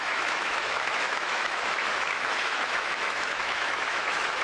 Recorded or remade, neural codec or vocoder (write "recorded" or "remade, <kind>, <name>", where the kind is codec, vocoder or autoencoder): remade, autoencoder, DAC-VAE